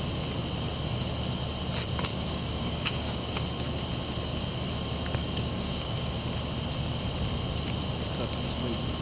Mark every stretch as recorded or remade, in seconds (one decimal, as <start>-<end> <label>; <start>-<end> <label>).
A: 0.0-2.1 recorded; 2.1-3.3 remade; 3.3-5.2 recorded; 5.2-6.1 remade; 6.1-9.0 recorded

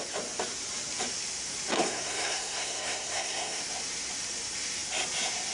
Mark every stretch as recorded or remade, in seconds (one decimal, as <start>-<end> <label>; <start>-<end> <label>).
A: 0.0-1.8 recorded; 1.8-3.6 remade; 3.6-5.5 recorded

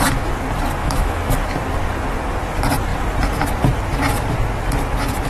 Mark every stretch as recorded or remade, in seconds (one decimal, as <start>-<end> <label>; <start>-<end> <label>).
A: 0.0-0.8 recorded; 0.8-1.4 remade; 1.4-5.3 recorded

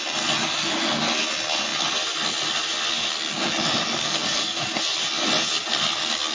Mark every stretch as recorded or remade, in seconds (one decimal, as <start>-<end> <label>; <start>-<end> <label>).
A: 0.0-4.0 recorded; 4.0-4.8 remade; 4.8-6.3 recorded

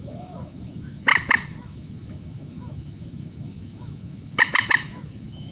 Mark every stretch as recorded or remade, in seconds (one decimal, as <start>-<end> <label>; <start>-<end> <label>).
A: 0.0-5.5 remade

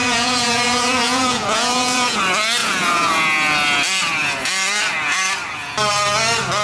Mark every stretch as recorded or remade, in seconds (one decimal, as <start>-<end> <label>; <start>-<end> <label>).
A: 0.0-2.2 remade; 2.2-2.6 recorded; 2.6-3.1 remade; 3.1-6.6 recorded